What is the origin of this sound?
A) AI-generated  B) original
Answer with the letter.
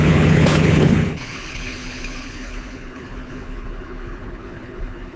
A